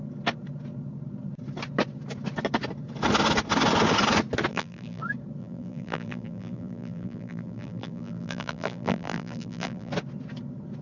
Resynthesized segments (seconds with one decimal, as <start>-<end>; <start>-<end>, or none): 4.5-5.0; 5.4-9.9